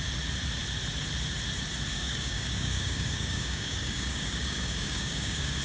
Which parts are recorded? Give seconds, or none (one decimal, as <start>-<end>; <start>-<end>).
0.0-1.9